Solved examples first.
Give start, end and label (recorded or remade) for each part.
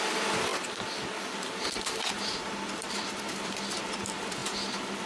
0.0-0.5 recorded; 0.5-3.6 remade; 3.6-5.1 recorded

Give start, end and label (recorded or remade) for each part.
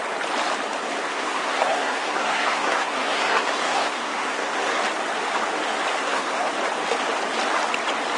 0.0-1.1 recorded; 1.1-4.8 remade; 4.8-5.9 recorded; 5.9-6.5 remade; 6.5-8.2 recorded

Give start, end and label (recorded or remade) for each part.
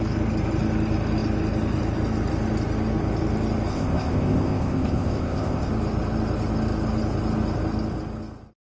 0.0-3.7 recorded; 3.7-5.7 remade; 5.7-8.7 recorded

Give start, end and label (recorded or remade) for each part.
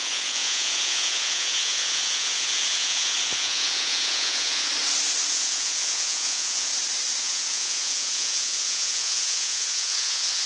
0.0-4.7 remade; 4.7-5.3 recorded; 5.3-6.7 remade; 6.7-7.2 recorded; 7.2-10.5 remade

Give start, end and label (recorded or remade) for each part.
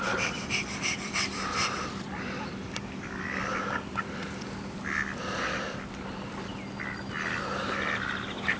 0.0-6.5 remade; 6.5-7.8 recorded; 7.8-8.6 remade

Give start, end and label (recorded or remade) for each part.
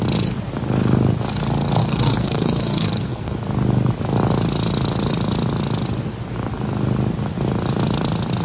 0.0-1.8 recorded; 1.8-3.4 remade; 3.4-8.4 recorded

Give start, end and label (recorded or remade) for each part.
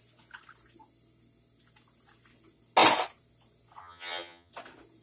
0.0-3.8 recorded; 3.8-4.5 remade; 4.5-5.0 recorded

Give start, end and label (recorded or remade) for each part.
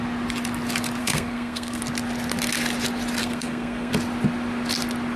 0.0-1.0 recorded; 1.0-1.8 remade; 1.8-3.2 recorded; 3.2-3.9 remade; 3.9-5.2 recorded